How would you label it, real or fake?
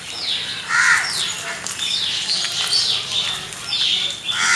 real